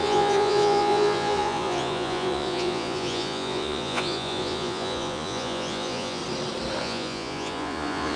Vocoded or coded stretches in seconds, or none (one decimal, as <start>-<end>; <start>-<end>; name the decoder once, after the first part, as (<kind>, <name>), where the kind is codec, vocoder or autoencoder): 0.0-6.2 (vocoder, Vocos); 6.8-8.2